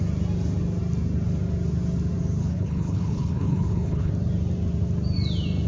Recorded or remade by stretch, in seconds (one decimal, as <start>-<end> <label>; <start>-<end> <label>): 0.0-2.4 recorded; 2.4-4.1 remade; 4.1-5.7 recorded